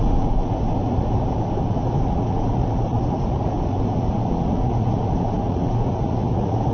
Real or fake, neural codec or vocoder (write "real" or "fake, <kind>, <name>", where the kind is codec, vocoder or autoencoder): fake, vocoder, Vocos